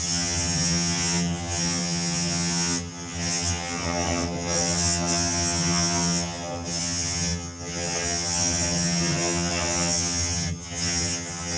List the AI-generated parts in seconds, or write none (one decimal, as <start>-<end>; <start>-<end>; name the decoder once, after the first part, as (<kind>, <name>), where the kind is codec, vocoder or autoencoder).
0.0-11.6 (vocoder, HiFi-GAN)